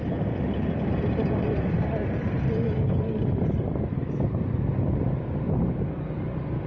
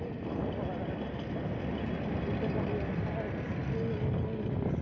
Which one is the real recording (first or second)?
second